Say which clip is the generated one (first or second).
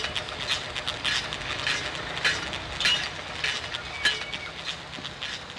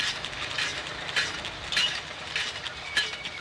second